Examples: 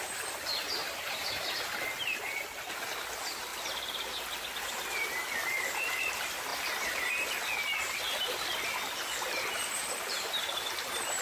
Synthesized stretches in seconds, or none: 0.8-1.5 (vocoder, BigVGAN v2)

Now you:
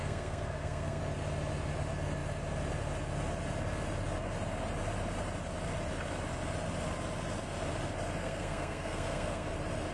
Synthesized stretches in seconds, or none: 0.0-1.0 (codec, SNAC); 8.2-9.5